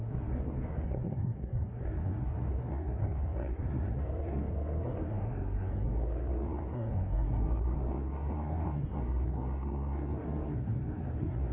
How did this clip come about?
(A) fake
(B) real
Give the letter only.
A